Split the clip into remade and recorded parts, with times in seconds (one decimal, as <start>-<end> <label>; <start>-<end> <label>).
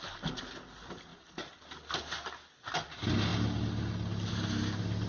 0.0-5.1 recorded